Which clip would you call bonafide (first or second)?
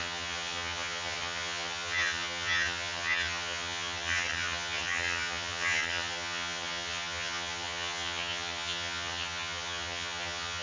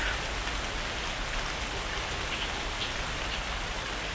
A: second